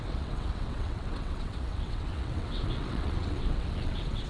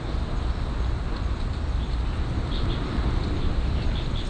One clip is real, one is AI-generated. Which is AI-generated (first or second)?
first